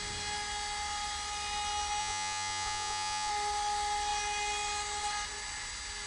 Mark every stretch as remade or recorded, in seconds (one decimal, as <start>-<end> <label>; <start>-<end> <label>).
0.0-2.0 recorded; 2.0-3.3 remade; 3.3-6.1 recorded